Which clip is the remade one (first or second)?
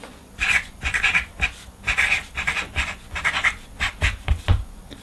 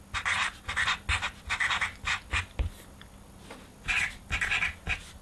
first